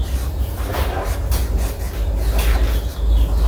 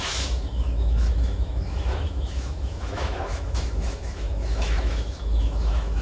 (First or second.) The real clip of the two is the first